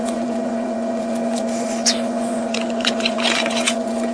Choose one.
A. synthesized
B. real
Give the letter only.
A